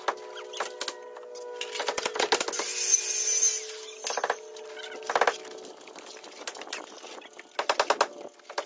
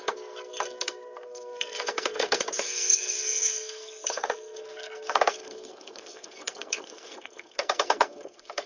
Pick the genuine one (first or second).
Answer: first